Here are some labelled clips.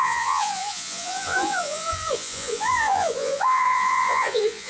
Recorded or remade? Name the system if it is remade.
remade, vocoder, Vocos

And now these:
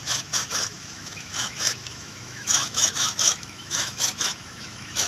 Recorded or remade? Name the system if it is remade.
remade, autoencoder, DAC-VAE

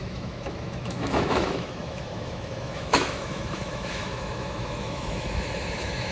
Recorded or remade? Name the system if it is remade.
remade, autoencoder, DAC-VAE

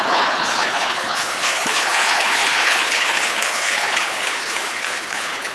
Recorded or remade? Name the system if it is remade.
remade, codec, HILCodec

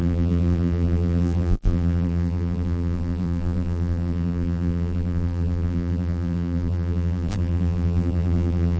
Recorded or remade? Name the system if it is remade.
remade, vocoder, BigVGAN v2